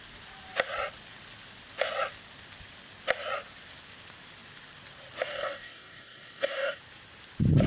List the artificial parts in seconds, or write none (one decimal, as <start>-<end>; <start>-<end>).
5.3-6.8